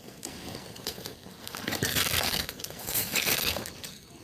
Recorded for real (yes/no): no